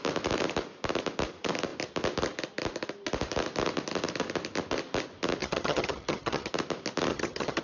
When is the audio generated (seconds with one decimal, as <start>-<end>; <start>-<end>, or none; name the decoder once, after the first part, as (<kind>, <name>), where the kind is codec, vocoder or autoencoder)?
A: 5.4-6.5 (vocoder, HiFi-GAN); 7.1-7.6